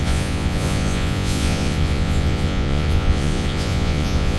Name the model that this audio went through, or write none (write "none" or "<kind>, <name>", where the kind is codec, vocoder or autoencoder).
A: vocoder, Vocos